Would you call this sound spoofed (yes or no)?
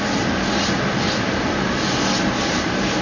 no